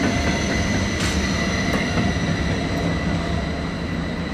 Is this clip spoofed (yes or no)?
no